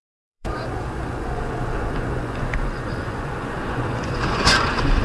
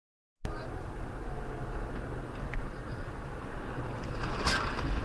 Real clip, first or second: second